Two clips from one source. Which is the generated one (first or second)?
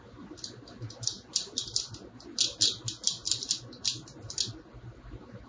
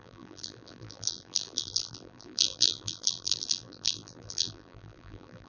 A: second